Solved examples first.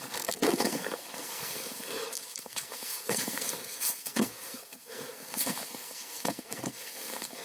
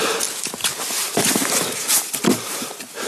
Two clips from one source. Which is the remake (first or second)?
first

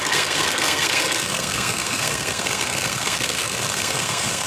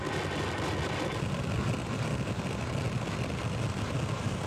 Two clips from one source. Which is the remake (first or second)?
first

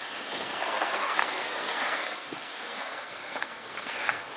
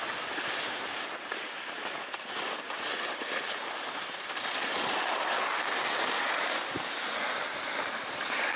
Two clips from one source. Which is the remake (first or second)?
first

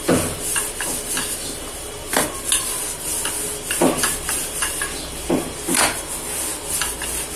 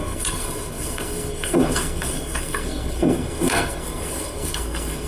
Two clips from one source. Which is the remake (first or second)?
second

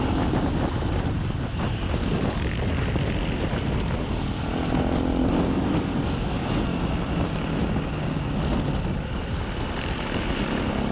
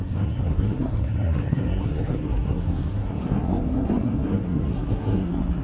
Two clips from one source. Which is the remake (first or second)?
second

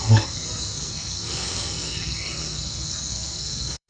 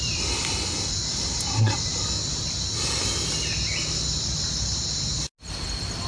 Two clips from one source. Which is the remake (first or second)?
first